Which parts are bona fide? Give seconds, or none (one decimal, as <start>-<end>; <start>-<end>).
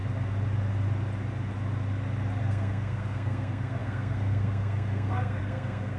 0.0-2.4